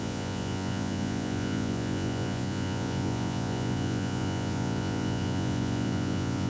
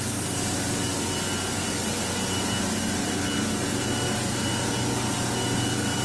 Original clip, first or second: second